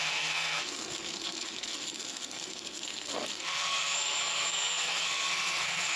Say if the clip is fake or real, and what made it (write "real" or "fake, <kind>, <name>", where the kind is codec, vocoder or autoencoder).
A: fake, codec, SNAC